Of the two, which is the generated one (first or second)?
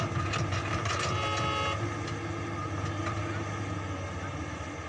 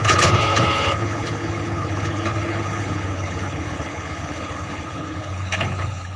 second